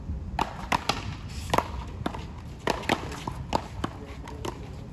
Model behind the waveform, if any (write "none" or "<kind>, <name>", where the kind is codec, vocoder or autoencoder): none